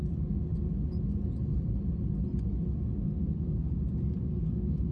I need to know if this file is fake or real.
real